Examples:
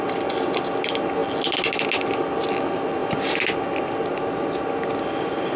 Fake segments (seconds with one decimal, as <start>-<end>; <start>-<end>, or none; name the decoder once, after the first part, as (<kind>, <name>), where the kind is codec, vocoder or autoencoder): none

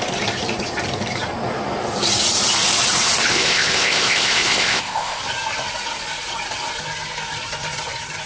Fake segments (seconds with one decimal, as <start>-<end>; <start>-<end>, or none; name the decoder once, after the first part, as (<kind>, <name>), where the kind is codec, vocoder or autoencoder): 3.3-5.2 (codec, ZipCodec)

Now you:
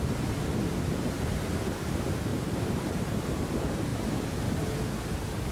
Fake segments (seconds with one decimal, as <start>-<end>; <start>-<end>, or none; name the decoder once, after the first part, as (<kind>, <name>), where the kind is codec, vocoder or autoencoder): 2.3-3.4 (vocoder, BigVGAN v2)

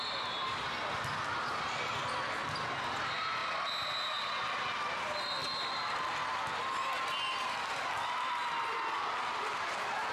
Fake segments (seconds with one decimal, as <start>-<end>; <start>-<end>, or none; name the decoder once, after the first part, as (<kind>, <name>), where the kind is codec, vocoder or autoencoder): 3.4-5.0 (vocoder, BigVGAN v2)

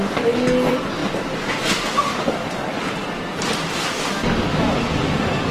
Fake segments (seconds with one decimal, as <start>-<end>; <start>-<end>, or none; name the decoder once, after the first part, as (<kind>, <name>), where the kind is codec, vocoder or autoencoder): 0.0-1.0 (vocoder, BigVGAN v2); 1.7-3.0; 5.0-5.5

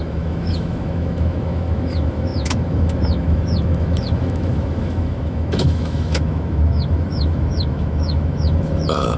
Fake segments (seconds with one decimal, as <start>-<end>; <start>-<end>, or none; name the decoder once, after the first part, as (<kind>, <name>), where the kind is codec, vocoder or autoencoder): 0.0-9.2 (autoencoder, DAC-VAE)